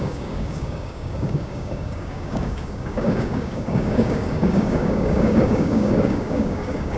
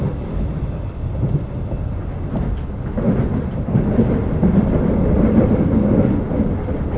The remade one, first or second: first